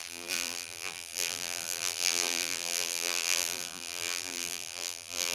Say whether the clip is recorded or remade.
remade